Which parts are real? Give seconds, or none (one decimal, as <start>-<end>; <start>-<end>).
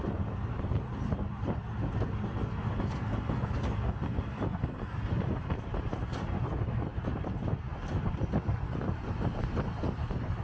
none